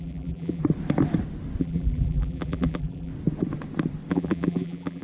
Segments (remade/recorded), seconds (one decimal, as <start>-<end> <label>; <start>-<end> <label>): 0.0-0.6 remade; 0.6-1.6 recorded; 1.6-3.1 remade; 3.1-4.1 recorded; 4.1-5.0 remade